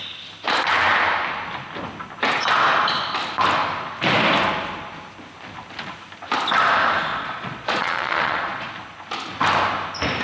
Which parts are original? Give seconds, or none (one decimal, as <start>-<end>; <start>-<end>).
0.0-7.1; 8.7-10.2